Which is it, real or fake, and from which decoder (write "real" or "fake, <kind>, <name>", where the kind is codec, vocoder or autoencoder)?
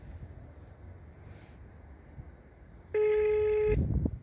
real